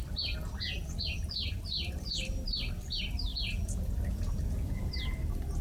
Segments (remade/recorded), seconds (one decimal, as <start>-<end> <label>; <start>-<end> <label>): 0.0-3.3 recorded; 3.3-4.9 remade; 4.9-5.6 recorded